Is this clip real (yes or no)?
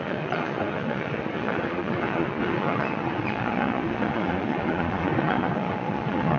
no